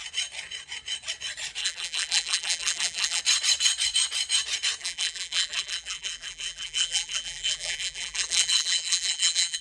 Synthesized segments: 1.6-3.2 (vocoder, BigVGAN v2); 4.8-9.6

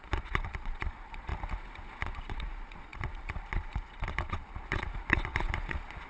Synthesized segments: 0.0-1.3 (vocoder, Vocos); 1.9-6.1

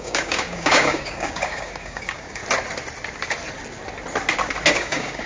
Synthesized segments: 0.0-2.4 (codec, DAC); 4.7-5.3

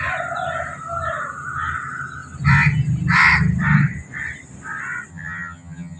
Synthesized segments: 5.1-6.0 (vocoder, HiFi-GAN)

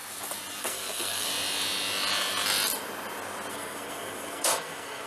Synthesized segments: 0.6-1.3 (codec, SNAC); 3.5-5.1

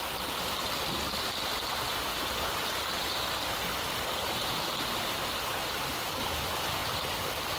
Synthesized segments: none

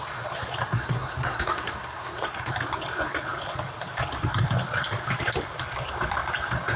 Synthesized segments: 0.6-2.5 (codec, SNAC)

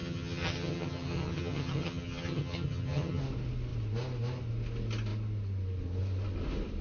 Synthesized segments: 0.0-3.2 (vocoder, HiFi-GAN)